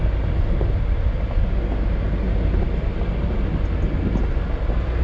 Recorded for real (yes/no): yes